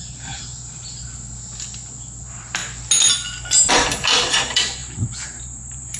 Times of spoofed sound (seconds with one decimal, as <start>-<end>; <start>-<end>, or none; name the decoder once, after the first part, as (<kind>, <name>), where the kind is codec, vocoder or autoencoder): 0.0-0.5 (vocoder, BigVGAN v2); 2.2-2.6; 3.7-6.0